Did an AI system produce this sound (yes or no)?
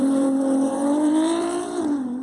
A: yes